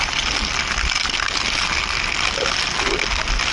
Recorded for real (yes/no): yes